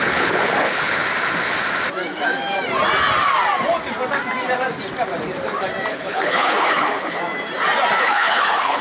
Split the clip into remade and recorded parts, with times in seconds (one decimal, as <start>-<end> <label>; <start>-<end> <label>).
0.0-1.0 remade; 1.0-5.9 recorded; 5.9-7.2 remade; 7.2-8.0 recorded; 8.0-8.8 remade